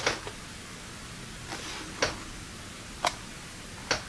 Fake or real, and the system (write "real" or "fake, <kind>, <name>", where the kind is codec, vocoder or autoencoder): real